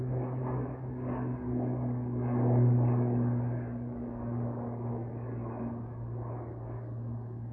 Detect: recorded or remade remade